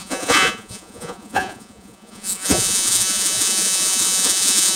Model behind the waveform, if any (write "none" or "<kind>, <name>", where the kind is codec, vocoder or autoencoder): vocoder, Vocos